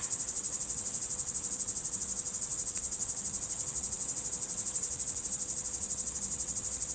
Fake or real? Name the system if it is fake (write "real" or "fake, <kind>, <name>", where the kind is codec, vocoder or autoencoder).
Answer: fake, vocoder, WaveNeXt